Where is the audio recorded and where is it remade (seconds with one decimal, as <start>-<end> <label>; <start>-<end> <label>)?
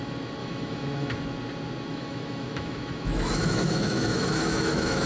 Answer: 0.0-0.4 recorded; 0.4-1.1 remade; 1.1-1.9 recorded; 1.9-5.1 remade